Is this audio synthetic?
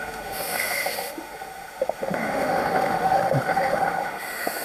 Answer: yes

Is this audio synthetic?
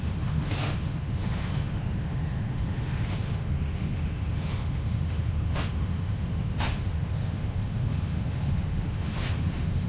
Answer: yes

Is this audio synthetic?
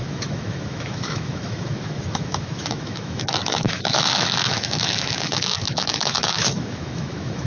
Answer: yes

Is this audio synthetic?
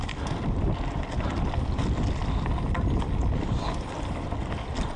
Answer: no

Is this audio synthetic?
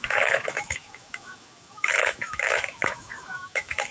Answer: yes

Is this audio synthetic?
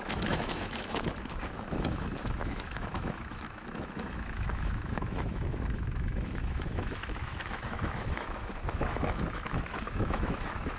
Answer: yes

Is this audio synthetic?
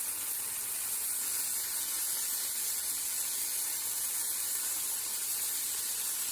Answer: no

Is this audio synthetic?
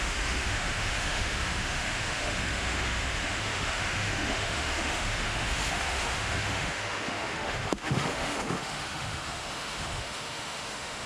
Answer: yes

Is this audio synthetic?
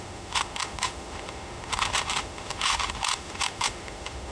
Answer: yes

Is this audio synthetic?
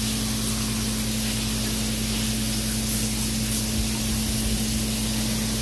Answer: no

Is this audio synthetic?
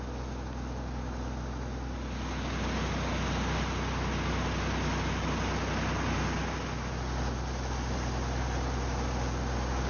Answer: no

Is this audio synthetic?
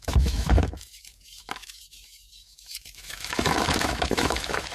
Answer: yes